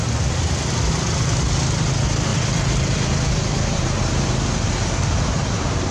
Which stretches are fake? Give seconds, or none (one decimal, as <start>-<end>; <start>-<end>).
0.0-0.9; 2.3-5.9